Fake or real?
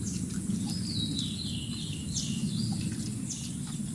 real